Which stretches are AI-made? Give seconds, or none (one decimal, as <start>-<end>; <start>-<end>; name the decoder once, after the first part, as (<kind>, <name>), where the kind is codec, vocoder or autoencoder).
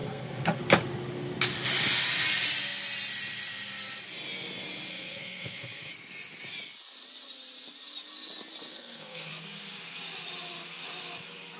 0.0-0.6 (codec, SNAC); 4.9-5.9; 8.7-9.3